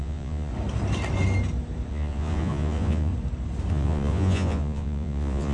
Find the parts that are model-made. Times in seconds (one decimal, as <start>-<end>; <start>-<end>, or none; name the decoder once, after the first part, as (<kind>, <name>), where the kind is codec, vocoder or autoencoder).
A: 0.0-0.5 (vocoder, Vocos); 1.9-3.1; 3.7-5.5